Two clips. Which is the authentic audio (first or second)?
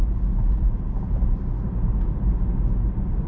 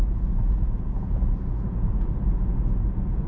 first